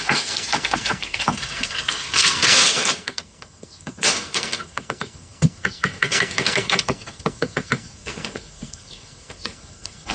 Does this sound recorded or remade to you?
remade